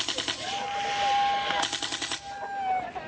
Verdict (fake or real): real